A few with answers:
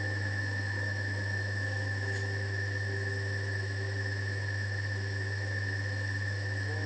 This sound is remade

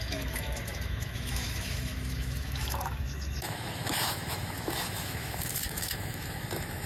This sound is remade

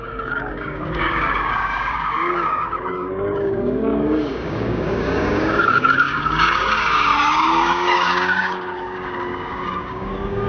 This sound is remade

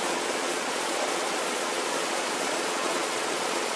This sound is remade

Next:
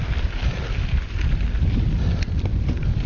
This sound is recorded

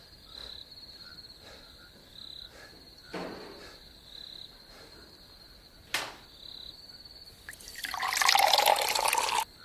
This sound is remade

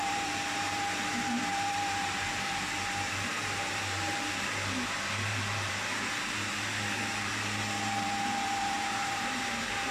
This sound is remade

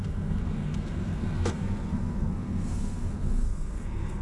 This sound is remade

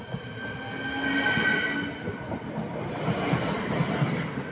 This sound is recorded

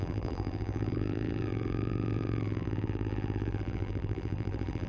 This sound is remade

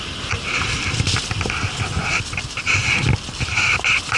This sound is recorded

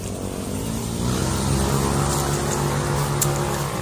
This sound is recorded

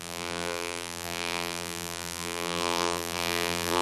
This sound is remade